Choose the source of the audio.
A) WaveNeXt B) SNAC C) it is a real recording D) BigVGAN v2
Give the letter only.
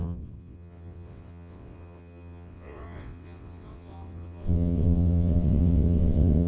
A